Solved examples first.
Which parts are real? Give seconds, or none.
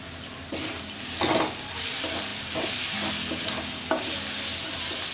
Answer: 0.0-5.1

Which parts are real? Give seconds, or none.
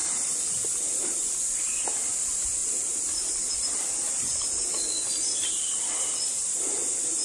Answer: 2.6-3.8; 4.3-5.1